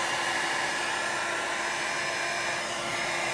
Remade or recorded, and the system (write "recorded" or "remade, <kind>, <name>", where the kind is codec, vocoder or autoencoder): recorded